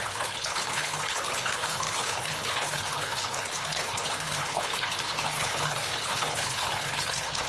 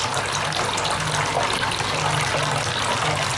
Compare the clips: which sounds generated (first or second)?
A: first